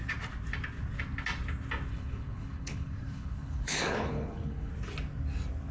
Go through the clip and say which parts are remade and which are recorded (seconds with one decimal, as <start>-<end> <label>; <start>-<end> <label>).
0.0-1.9 recorded; 1.9-4.7 remade; 4.7-5.7 recorded